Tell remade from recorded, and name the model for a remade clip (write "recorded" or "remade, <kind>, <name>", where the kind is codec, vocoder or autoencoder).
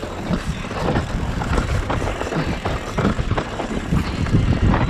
remade, vocoder, BigVGAN v2